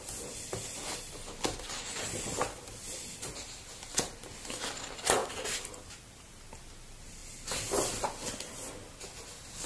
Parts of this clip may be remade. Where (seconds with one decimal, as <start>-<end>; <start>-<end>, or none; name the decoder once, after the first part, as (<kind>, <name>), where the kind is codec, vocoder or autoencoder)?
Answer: none